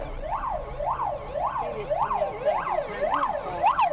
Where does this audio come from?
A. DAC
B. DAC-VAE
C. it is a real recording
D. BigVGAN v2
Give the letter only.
C